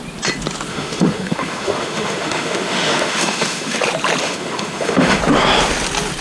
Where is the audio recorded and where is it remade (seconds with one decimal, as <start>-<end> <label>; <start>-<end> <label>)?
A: 0.0-0.7 recorded; 0.7-3.8 remade; 3.8-4.2 recorded; 4.2-5.2 remade; 5.2-6.2 recorded